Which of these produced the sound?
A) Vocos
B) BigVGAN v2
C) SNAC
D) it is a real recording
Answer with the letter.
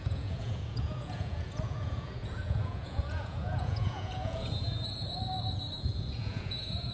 A